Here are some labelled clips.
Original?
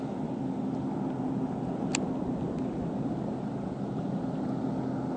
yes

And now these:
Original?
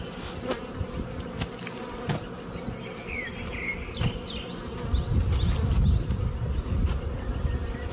yes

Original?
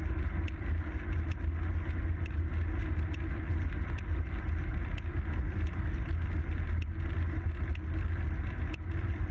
yes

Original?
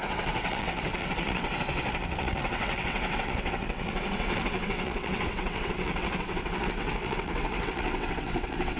no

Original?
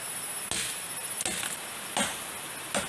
yes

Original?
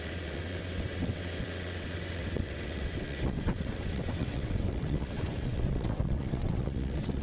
no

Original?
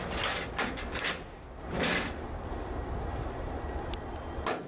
yes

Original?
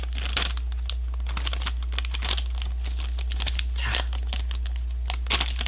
yes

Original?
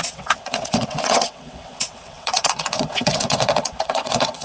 no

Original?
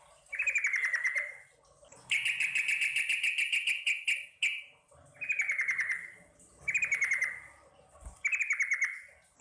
yes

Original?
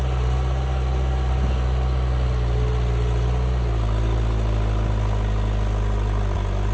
yes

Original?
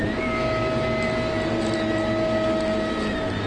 yes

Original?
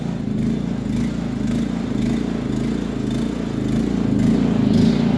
yes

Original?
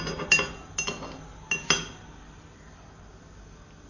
yes